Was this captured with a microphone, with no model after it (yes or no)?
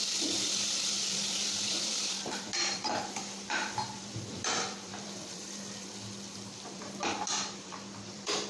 no